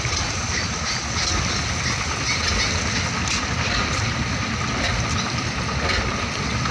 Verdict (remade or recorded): recorded